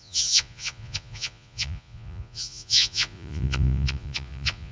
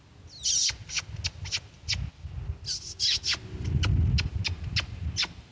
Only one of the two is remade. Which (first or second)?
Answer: first